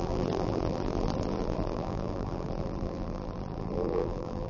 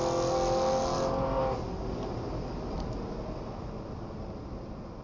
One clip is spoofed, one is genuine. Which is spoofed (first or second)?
first